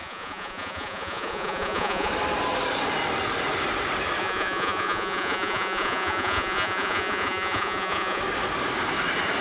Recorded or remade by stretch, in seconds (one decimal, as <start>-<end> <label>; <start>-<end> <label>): 0.0-2.1 remade; 2.1-4.2 recorded; 4.2-8.2 remade; 8.2-9.4 recorded